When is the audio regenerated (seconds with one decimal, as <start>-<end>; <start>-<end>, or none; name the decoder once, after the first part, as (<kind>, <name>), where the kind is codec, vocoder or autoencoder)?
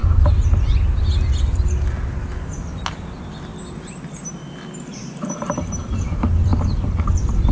3.5-4.1 (vocoder, BigVGAN v2); 4.9-5.6